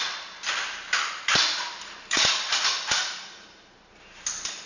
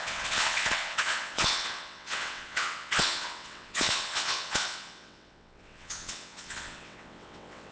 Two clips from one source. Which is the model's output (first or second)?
second